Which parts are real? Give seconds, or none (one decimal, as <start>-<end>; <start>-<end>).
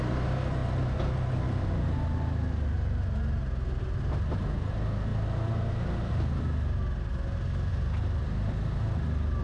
0.0-9.4